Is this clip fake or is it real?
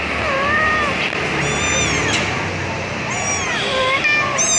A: real